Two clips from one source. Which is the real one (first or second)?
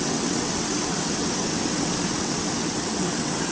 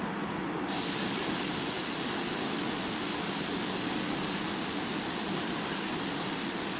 second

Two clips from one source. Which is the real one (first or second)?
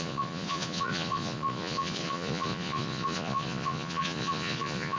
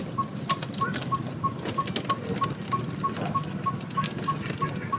second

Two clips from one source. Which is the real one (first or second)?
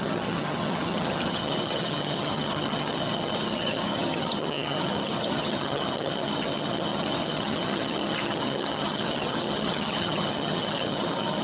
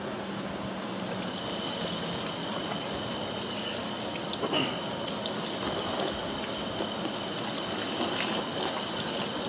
second